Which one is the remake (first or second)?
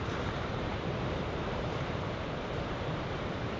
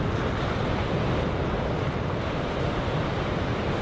first